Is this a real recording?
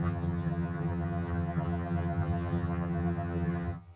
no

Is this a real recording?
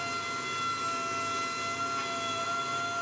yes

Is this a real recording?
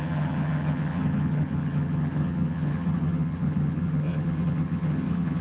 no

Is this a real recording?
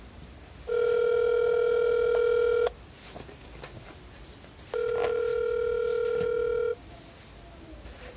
yes